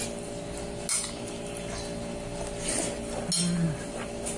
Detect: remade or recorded recorded